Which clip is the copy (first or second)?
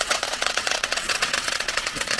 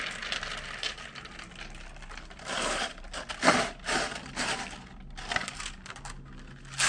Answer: first